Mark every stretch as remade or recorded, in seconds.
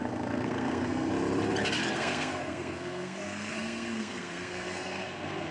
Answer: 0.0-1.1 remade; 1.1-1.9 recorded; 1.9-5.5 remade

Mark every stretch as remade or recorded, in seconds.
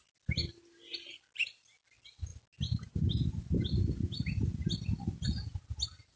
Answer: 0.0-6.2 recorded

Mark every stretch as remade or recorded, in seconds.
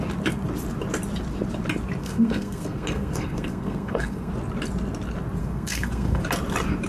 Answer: 0.0-2.0 recorded; 2.0-4.3 remade; 4.3-5.4 recorded; 5.4-6.2 remade; 6.2-6.9 recorded